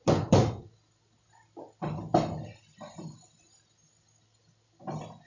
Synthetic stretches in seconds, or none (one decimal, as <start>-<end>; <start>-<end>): none